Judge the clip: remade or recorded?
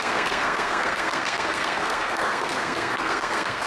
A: remade